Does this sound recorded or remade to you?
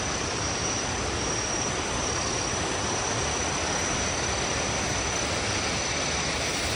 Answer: recorded